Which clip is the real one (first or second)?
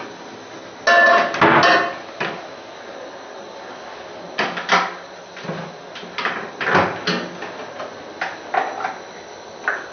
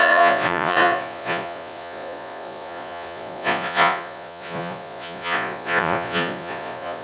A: first